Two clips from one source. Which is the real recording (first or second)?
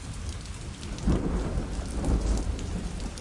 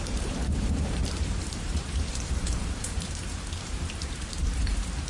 first